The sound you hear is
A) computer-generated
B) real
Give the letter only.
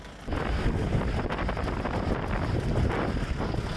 B